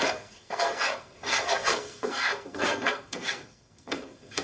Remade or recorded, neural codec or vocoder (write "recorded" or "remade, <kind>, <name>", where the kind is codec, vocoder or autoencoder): remade, codec, SNAC